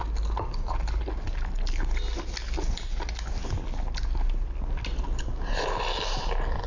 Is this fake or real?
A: real